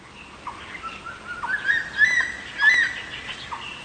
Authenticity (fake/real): real